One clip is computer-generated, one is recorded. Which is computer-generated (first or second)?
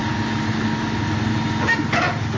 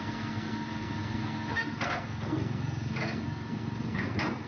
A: second